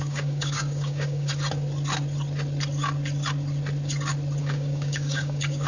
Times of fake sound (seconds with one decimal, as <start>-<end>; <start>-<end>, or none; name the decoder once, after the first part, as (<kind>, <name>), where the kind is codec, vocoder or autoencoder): 0.0-1.3 (codec, DAC); 4.4-5.7